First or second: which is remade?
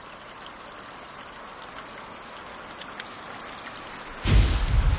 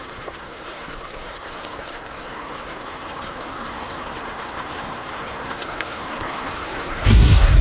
second